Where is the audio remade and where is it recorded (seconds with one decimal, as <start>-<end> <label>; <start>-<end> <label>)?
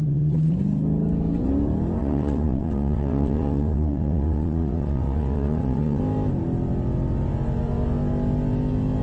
0.0-0.5 remade; 0.5-2.0 recorded; 2.0-6.0 remade; 6.0-9.0 recorded